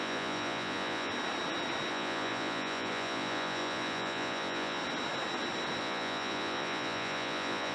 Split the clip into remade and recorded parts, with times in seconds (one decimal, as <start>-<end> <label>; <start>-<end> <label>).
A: 0.0-1.1 remade; 1.1-1.9 recorded; 1.9-4.8 remade; 4.8-5.8 recorded; 5.8-7.7 remade